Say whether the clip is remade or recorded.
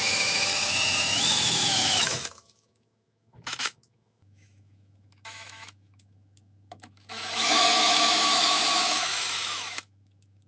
remade